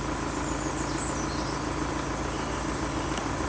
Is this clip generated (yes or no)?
no